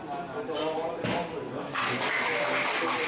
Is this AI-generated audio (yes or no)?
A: no